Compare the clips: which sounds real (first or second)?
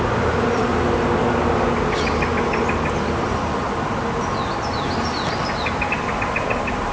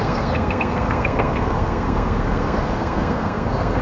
first